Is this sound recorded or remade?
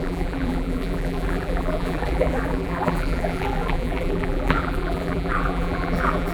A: remade